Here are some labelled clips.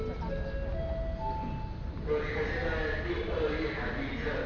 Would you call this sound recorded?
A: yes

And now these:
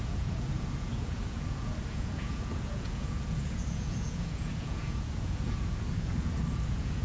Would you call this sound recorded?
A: no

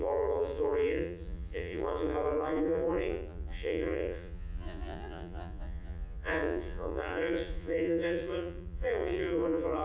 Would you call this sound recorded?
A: no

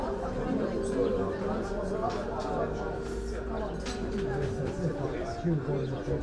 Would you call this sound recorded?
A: yes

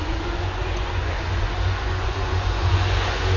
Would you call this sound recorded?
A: no